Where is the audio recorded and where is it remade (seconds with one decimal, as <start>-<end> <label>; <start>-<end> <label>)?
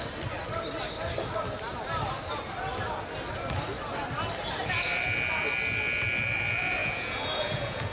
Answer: 0.0-6.8 recorded; 6.8-7.9 remade